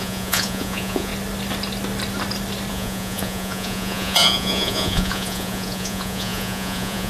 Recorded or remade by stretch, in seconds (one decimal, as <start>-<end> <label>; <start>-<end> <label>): 0.0-1.1 remade; 1.1-2.7 recorded; 2.7-7.1 remade